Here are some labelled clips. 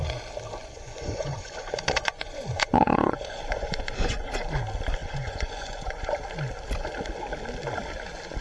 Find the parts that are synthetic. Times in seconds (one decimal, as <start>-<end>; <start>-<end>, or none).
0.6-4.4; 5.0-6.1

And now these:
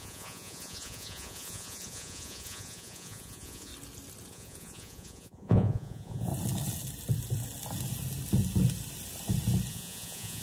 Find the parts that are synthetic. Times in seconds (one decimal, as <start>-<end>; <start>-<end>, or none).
0.0-3.7; 4.3-6.3; 9.7-10.4

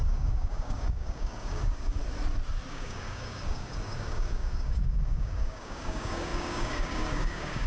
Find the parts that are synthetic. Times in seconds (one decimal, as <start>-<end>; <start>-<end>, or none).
0.0-2.0; 2.7-7.7